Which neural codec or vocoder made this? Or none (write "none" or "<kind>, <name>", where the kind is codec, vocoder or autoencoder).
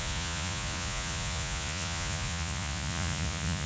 vocoder, Vocos